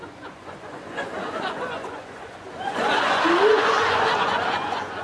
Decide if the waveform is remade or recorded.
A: remade